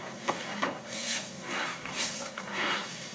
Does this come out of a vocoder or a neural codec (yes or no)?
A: yes